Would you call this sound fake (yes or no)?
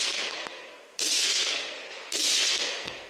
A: yes